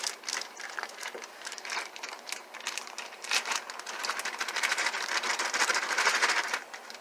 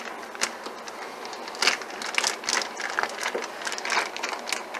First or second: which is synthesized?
first